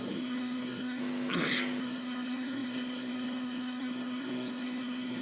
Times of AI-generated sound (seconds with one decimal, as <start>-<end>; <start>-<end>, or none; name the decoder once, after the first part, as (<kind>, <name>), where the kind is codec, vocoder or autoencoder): 0.0-1.0 (codec, SNAC); 1.8-5.2

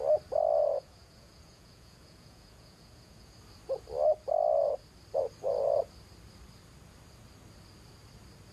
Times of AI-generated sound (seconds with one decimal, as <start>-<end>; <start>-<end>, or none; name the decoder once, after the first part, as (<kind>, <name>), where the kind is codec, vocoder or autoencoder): 0.6-3.4 (vocoder, Vocos)

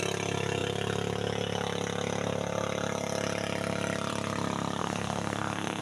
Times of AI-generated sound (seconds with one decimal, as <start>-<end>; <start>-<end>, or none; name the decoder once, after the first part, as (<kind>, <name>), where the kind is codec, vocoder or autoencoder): 4.8-5.8 (codec, SNAC)

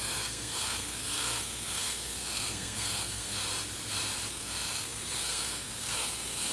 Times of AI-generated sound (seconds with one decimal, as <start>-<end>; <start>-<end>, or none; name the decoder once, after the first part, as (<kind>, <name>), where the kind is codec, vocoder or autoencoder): 0.0-3.4 (codec, SNAC); 4.3-6.5

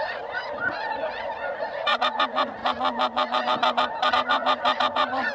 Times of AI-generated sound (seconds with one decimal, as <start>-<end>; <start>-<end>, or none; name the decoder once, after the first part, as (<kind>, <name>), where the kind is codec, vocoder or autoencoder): 0.0-2.6 (vocoder, Vocos); 4.1-5.3

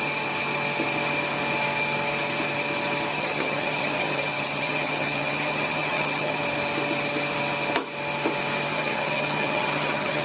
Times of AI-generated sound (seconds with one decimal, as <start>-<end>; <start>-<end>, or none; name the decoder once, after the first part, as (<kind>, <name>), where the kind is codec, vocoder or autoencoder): 3.1-6.4 (vocoder, HiFi-GAN); 8.7-10.2

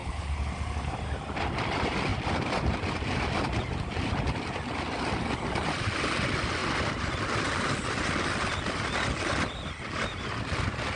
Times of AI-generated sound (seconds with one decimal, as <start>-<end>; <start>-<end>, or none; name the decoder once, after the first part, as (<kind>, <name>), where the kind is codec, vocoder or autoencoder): 0.0-0.5 (codec, HILCodec)